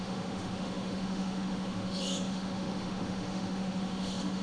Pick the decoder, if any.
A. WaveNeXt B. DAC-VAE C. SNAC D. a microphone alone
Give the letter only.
B